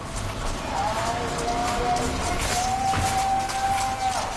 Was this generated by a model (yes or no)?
no